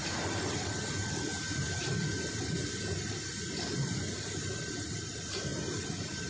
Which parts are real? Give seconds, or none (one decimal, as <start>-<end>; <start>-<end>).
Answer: 0.0-6.3